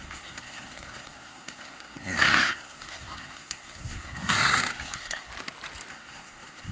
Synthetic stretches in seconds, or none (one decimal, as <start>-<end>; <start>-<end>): 0.0-5.3; 5.9-6.7